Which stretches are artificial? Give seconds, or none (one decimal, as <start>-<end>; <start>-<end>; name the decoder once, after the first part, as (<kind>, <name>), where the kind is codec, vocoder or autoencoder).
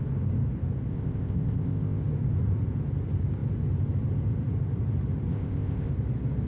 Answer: 0.9-2.0 (codec, ZipCodec); 5.3-5.9